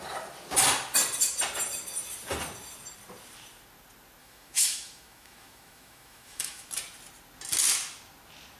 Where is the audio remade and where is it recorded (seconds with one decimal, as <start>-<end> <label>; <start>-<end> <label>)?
0.0-4.2 recorded; 4.2-6.7 remade; 6.7-8.6 recorded